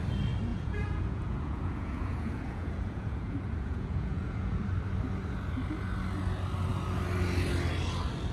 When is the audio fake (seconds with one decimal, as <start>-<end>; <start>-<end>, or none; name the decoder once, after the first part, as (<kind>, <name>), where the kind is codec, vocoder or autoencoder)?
0.5-4.6 (vocoder, Vocos)